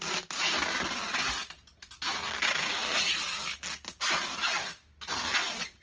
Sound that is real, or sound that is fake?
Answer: real